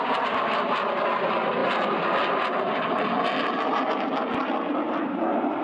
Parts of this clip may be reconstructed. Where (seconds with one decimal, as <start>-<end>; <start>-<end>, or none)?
none